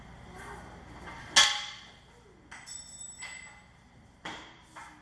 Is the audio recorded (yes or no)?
yes